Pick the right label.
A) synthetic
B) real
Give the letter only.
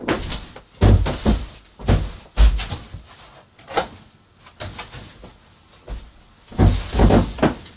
B